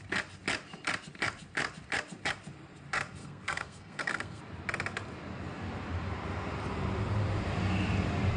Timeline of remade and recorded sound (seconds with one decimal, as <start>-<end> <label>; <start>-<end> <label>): 0.0-3.2 recorded; 3.2-4.4 remade; 4.4-8.4 recorded